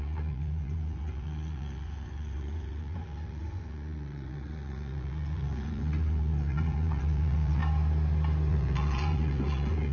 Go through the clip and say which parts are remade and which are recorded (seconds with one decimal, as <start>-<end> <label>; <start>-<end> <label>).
0.0-7.6 remade; 7.6-8.5 recorded; 8.5-9.9 remade